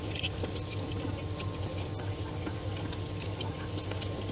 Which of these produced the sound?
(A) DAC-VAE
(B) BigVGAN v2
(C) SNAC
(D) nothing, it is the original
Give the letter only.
B